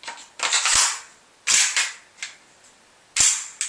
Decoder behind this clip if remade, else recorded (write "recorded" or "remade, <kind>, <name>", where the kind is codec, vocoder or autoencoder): recorded